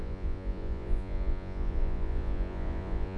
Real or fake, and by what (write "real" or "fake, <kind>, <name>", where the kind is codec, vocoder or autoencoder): fake, vocoder, Vocos